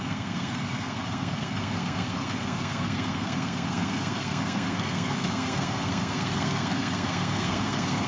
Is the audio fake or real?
fake